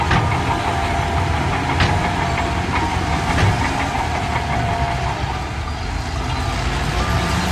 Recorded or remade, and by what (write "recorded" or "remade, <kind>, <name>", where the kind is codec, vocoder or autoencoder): recorded